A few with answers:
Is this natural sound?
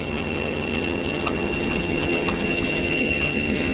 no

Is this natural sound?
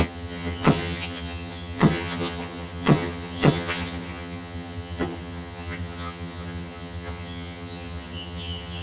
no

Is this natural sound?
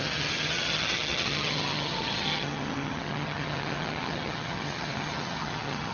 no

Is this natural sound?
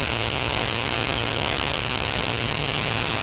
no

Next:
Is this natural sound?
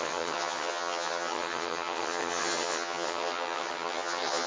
no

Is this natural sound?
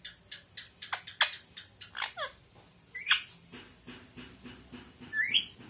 yes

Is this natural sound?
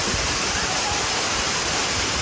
yes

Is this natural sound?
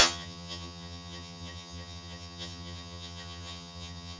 no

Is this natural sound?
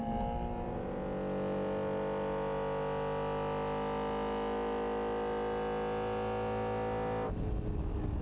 yes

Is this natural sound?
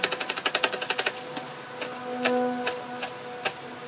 yes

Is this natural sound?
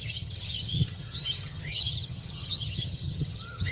no